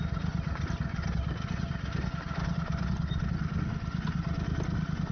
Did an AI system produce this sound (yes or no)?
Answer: no